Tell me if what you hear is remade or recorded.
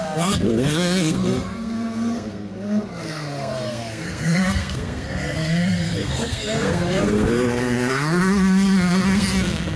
remade